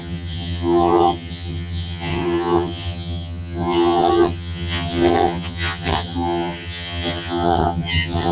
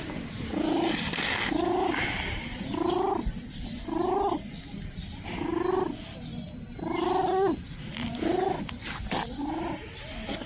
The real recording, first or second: second